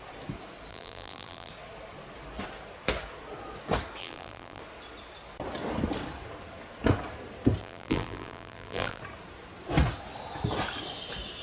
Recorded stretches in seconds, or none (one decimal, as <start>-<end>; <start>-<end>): 0.0-0.7; 1.5-4.0; 4.6-7.6; 9.0-11.4